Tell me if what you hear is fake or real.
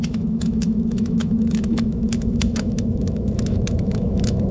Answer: fake